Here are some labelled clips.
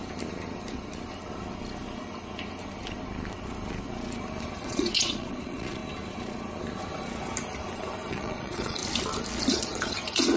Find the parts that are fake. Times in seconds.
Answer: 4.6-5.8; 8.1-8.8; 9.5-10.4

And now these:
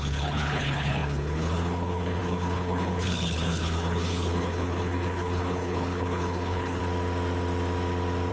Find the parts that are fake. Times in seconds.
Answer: 0.0-6.8

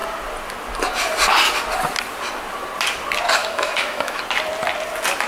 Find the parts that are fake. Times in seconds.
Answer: 3.4-4.2